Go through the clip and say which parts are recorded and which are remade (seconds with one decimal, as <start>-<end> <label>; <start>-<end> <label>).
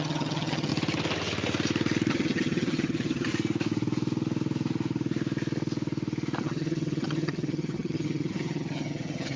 0.0-0.7 remade; 0.7-2.1 recorded; 2.1-3.3 remade; 3.3-6.4 recorded; 6.4-9.4 remade